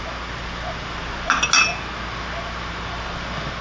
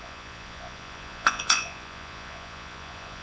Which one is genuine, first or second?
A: first